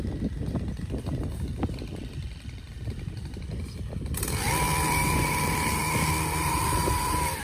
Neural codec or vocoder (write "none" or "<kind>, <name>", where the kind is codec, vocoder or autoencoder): none